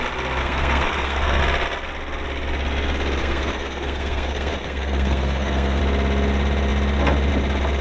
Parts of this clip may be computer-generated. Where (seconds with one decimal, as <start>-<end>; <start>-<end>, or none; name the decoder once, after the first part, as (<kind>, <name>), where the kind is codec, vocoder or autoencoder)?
0.4-1.4 (codec, SNAC); 3.2-5.8

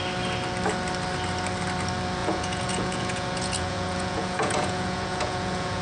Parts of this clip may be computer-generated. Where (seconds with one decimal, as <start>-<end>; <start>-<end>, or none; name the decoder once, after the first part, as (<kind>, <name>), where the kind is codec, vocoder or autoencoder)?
2.2-5.8 (vocoder, Vocos)

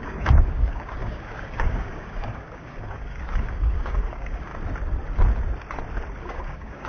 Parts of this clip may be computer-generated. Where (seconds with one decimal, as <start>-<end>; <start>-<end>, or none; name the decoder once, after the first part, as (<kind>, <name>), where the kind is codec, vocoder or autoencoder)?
0.0-4.5 (codec, DAC); 6.2-6.9

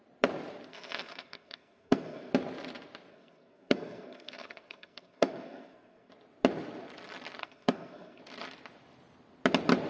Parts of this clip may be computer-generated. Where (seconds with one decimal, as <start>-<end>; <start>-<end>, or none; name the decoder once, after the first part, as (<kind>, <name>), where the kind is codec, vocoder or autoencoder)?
0.7-2.3 (codec, SNAC); 3.1-6.1; 7.4-8.2

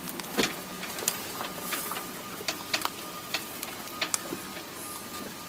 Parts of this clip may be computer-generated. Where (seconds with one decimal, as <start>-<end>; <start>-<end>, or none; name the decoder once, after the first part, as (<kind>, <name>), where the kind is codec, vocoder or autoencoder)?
0.7-4.0 (vocoder, BigVGAN v2); 4.5-5.5

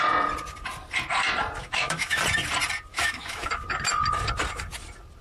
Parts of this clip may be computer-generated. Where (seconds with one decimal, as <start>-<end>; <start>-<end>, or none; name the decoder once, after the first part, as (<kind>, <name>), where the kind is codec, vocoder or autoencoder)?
1.6-2.2 (autoencoder, DAC-VAE); 2.9-3.5